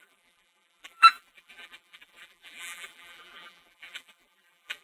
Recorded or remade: remade